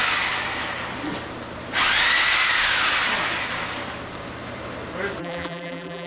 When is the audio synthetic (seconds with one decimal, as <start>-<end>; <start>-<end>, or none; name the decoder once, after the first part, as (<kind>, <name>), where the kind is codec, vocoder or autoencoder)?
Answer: 5.2-6.1 (vocoder, BigVGAN v2)